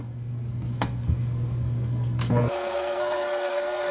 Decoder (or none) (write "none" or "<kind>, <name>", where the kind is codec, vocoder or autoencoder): codec, SNAC